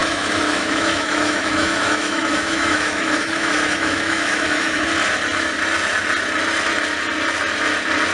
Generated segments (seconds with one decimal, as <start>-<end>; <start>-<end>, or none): 0.0-4.9